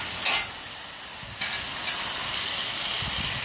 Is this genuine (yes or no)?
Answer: yes